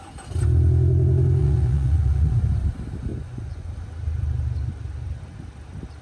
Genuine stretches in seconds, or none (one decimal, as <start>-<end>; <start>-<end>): 0.0-1.4; 2.4-3.1; 3.7-6.0